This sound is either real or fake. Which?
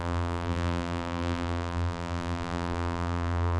fake